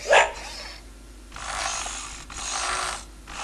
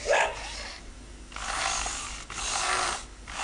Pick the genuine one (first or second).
first